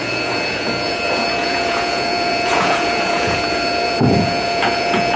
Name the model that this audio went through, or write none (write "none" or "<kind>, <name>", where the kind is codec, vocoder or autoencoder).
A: vocoder, Vocos